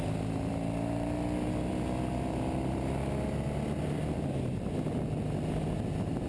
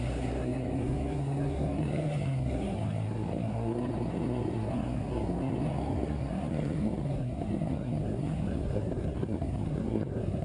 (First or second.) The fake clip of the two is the second